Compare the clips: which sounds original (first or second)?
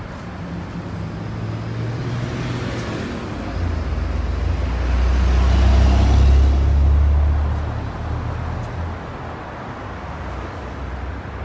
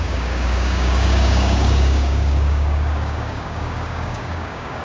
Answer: first